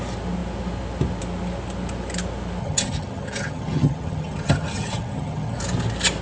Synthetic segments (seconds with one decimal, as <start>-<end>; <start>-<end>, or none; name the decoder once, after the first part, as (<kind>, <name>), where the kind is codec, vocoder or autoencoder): 2.6-5.6 (vocoder, HiFi-GAN)

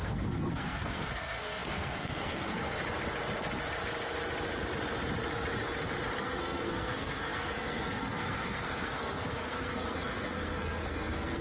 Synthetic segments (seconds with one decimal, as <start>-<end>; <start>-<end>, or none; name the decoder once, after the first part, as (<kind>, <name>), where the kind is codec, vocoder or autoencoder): 0.0-2.8 (codec, SNAC); 6.2-11.4

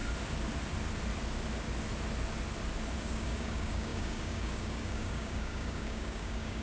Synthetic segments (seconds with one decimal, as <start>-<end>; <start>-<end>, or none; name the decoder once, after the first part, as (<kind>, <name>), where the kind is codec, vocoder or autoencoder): 3.0-6.6 (codec, DAC)

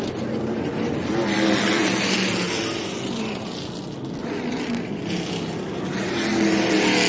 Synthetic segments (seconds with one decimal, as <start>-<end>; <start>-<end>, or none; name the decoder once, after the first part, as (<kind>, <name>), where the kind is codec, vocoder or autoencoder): none